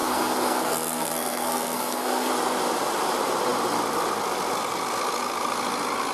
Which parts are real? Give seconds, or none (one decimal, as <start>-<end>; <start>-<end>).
2.3-6.1